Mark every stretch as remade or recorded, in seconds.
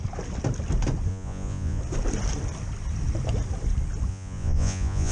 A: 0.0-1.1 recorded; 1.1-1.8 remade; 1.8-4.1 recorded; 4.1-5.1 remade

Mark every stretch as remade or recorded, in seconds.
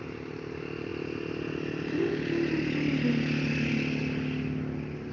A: 0.0-5.1 recorded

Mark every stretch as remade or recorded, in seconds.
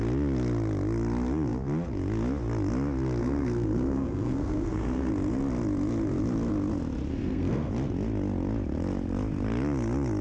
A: 0.0-3.2 recorded; 3.2-5.1 remade; 5.1-7.1 recorded; 7.1-7.7 remade; 7.7-10.2 recorded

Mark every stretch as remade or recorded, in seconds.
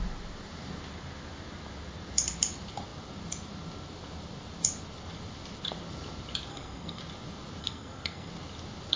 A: 0.0-6.5 recorded; 6.5-7.0 remade; 7.0-7.6 recorded; 7.6-8.3 remade; 8.3-9.0 recorded